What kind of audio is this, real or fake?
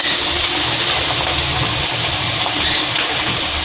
real